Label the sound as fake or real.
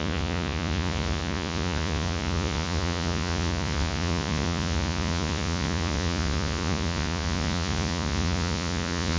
fake